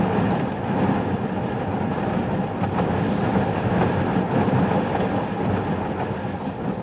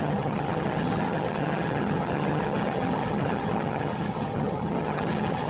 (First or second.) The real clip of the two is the first